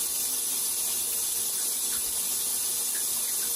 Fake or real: real